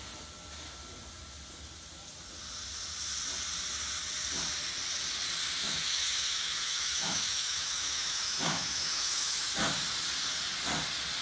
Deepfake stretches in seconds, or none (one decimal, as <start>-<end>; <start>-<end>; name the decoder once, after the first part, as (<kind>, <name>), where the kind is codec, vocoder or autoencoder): 5.6-9.5 (autoencoder, DAC-VAE)